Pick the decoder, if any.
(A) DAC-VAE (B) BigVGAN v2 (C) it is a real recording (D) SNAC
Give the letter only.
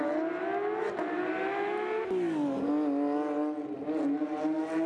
C